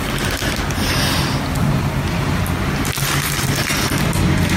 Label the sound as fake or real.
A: real